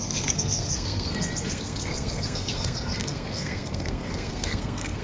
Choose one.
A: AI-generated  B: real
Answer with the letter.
A